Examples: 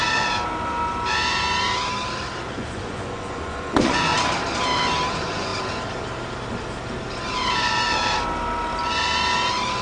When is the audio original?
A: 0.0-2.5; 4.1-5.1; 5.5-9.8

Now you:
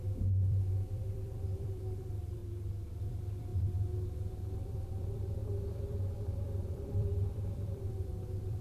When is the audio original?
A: 2.4-3.0; 3.5-4.2

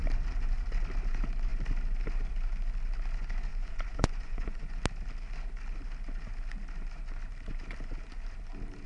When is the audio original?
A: 0.0-3.5; 4.7-8.9

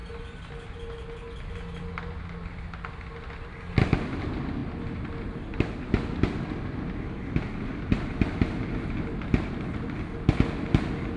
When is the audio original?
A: 0.0-11.2